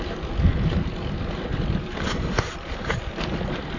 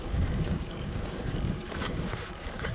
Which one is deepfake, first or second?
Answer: second